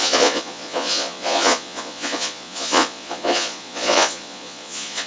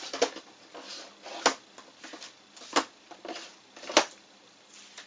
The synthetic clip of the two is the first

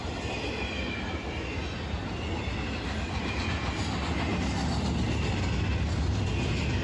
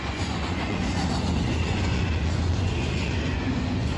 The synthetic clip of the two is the second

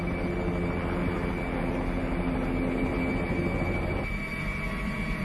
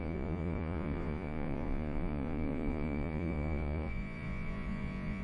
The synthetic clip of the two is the second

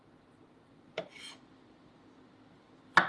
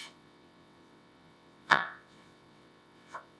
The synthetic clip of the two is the second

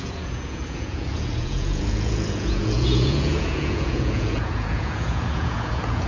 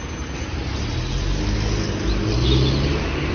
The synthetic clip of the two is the first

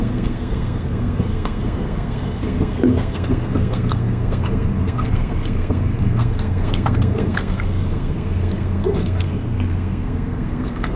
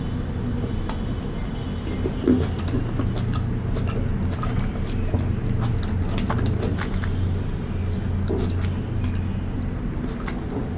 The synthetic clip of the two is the first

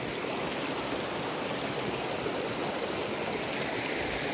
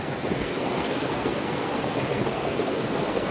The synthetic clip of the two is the second